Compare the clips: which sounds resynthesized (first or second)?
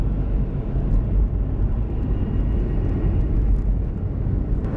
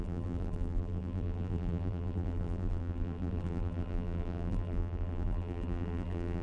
second